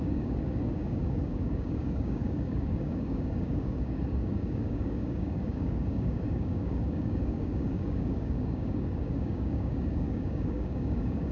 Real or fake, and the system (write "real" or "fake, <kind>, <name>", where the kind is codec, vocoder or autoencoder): fake, codec, DAC